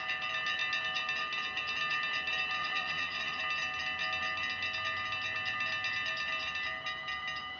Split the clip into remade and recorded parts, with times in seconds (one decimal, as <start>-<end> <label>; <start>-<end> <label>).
0.0-2.6 recorded; 2.6-3.4 remade; 3.4-7.6 recorded